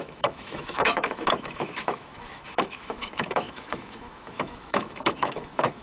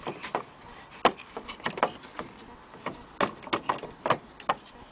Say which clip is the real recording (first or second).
second